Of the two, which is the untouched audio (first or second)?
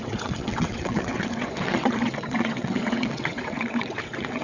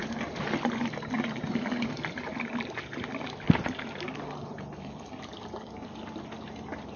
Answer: second